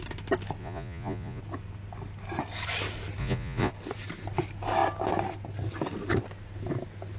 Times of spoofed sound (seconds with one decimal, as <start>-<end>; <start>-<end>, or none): 0.6-1.4; 3.2-3.7